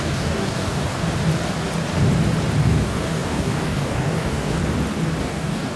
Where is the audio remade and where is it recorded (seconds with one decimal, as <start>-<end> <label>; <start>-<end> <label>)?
0.0-1.0 remade; 1.0-2.6 recorded; 2.6-4.6 remade; 4.6-5.2 recorded; 5.2-5.8 remade